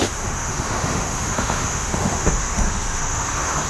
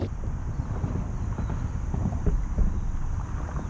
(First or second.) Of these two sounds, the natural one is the second